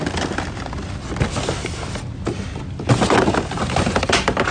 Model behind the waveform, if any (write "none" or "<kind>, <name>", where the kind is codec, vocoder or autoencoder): none